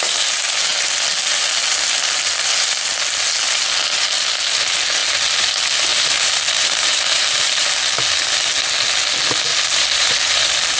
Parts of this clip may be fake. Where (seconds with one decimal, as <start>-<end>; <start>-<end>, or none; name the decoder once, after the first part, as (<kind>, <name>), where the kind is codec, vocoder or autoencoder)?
5.9-7.8 (vocoder, BigVGAN v2); 9.5-10.8